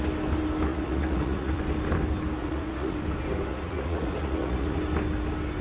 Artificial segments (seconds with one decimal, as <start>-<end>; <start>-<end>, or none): 0.7-1.6; 2.4-3.0; 3.5-4.8

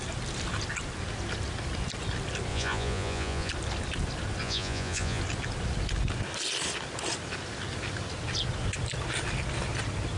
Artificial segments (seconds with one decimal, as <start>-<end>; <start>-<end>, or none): 2.5-3.5; 4.4-5.2

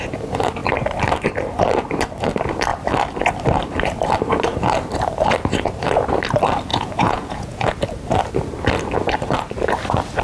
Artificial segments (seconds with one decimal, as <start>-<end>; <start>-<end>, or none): 6.7-7.7